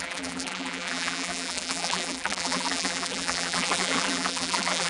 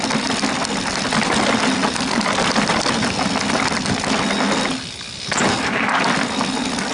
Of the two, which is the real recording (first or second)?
second